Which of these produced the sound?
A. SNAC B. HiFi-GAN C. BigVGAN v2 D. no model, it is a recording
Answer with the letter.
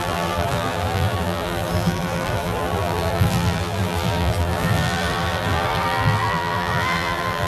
C